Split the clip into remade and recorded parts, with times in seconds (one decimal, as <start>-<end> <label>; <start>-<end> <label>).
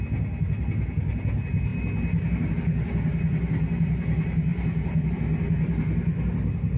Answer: 0.0-6.8 recorded